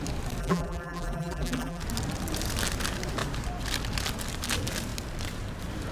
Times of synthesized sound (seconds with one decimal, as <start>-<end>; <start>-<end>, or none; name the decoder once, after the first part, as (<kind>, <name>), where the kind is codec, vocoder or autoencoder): 0.4-1.8 (vocoder, BigVGAN v2)